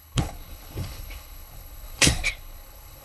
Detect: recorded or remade remade